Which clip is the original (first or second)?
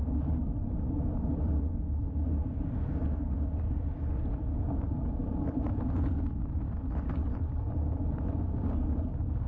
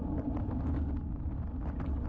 second